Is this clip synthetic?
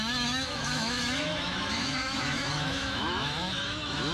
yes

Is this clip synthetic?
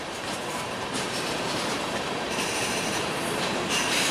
yes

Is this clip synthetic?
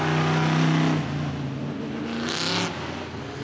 no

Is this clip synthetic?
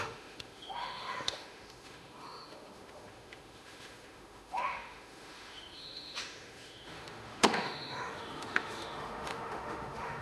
yes